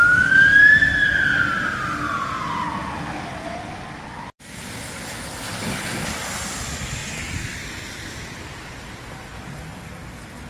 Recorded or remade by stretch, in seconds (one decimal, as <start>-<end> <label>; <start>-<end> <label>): 0.0-10.5 recorded